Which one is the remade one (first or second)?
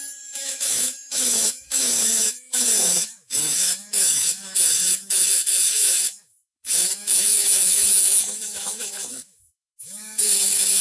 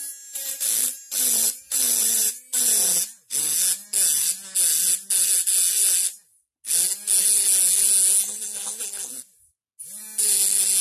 first